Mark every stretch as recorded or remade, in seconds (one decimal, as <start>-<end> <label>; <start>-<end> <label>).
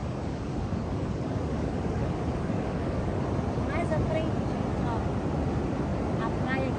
0.0-3.2 remade; 3.2-6.8 recorded